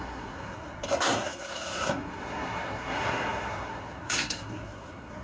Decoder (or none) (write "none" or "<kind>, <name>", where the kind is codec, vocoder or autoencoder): codec, SNAC